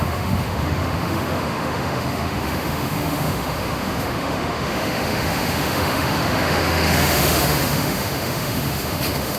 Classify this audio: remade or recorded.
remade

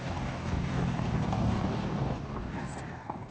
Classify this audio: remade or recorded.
remade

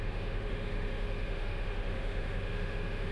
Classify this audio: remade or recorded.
remade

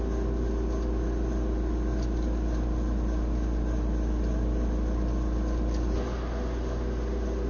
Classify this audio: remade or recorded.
recorded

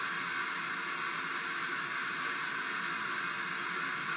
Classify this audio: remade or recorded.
recorded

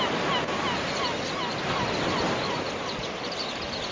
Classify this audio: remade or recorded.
recorded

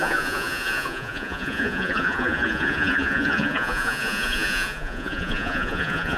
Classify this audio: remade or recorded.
remade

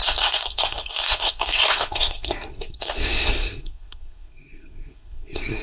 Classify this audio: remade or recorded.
remade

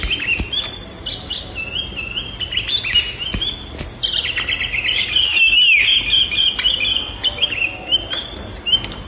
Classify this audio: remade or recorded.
recorded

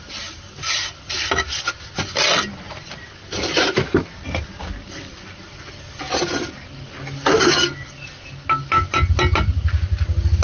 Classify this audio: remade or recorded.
recorded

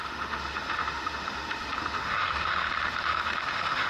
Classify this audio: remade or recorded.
remade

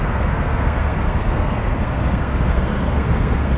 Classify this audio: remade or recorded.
remade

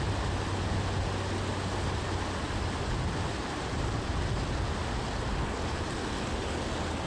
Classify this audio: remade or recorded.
recorded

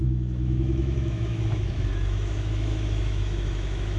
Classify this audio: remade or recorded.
remade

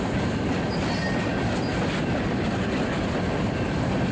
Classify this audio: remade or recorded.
recorded